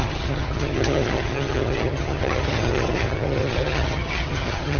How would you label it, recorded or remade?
remade